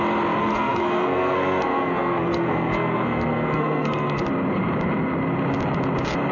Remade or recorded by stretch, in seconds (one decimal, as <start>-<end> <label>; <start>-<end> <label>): 0.0-0.4 recorded; 0.4-4.2 remade; 4.2-6.3 recorded